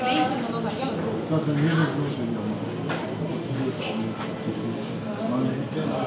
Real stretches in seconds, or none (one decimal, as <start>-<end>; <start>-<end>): 0.0-6.1